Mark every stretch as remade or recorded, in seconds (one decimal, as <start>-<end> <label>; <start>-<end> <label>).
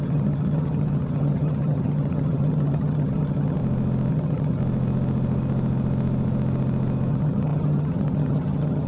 0.0-3.6 remade; 3.6-4.1 recorded; 4.1-4.6 remade; 4.6-7.1 recorded; 7.1-8.9 remade